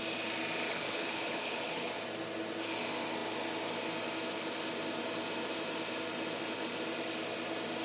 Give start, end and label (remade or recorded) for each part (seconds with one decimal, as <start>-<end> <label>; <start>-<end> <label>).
0.0-0.7 recorded; 0.7-2.0 remade; 2.0-7.8 recorded